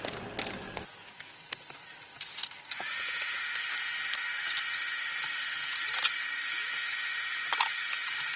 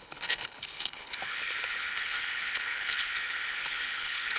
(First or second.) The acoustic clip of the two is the first